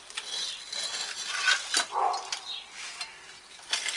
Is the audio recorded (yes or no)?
yes